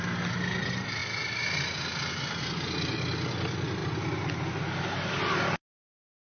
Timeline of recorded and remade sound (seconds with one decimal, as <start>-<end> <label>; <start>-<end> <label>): 0.0-6.3 recorded

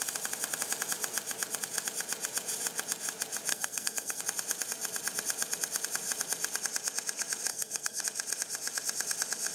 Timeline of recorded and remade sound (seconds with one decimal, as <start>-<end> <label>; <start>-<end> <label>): 0.0-3.5 recorded; 3.5-4.2 remade; 4.2-7.5 recorded; 7.5-8.0 remade; 8.0-9.5 recorded

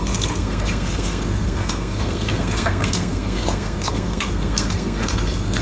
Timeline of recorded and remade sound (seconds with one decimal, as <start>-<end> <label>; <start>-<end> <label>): 0.0-5.6 remade

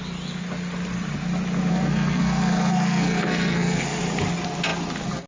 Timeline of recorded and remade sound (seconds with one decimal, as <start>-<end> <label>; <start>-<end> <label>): 0.0-1.7 recorded; 1.7-4.0 remade; 4.0-5.3 recorded

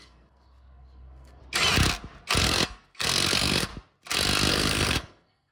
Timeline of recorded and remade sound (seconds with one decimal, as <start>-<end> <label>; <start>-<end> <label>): 0.0-1.4 remade; 1.4-2.4 recorded; 2.4-3.7 remade; 3.7-4.5 recorded; 4.5-5.5 remade

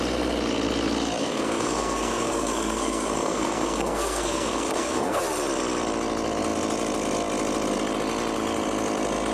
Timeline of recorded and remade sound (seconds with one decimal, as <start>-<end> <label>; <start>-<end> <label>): 0.0-1.2 recorded; 1.2-5.2 remade; 5.2-9.3 recorded

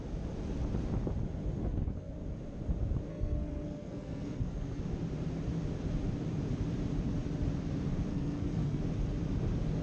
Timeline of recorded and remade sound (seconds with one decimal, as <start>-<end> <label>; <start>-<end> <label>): 0.0-1.6 recorded; 1.6-2.1 remade; 2.1-3.1 recorded; 3.1-4.8 remade; 4.8-8.1 recorded; 8.1-8.8 remade; 8.8-9.8 recorded

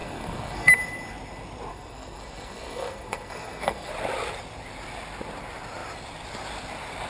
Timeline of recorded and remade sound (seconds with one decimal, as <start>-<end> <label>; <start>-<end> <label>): 0.0-0.7 remade; 0.7-1.7 recorded; 1.7-3.9 remade; 3.9-7.1 recorded